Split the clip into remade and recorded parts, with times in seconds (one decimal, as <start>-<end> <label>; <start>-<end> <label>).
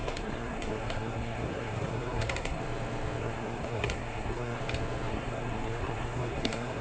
0.0-2.6 remade; 2.6-3.2 recorded; 3.2-4.6 remade; 4.6-5.1 recorded; 5.1-6.8 remade